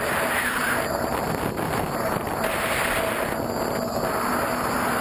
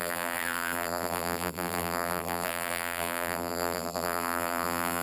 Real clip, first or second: first